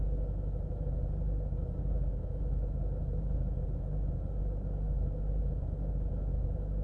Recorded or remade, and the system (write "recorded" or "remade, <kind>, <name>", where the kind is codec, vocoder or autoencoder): recorded